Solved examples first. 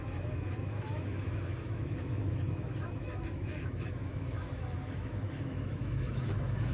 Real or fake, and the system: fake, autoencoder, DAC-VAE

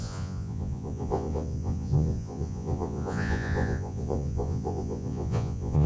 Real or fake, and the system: fake, vocoder, Vocos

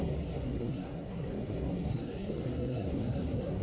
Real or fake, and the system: fake, codec, SNAC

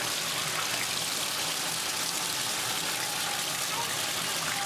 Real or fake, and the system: real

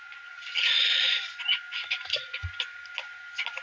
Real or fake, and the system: real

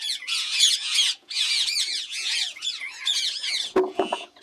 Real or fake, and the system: fake, vocoder, Vocos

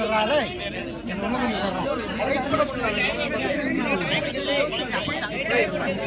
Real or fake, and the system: real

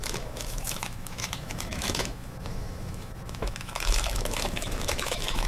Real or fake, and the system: fake, autoencoder, DAC-VAE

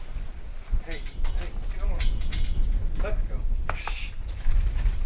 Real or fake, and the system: real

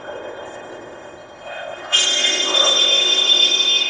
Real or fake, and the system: fake, codec, ZipCodec